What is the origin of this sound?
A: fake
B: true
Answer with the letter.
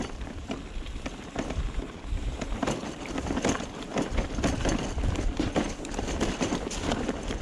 A